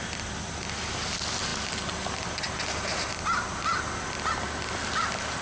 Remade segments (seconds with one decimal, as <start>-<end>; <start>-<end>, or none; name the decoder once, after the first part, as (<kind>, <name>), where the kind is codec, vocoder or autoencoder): none